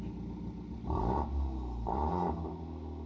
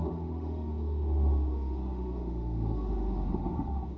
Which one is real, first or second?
first